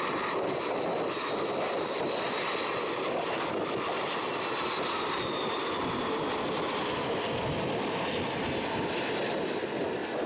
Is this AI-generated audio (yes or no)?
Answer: no